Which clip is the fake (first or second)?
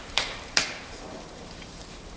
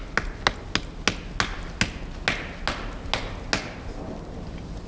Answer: first